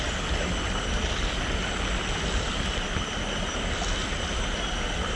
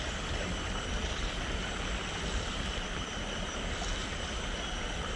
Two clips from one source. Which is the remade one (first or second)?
second